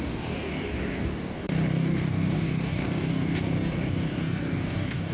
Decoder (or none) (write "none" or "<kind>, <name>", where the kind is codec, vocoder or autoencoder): codec, DAC